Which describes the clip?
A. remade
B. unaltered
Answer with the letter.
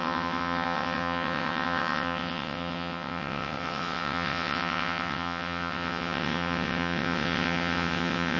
A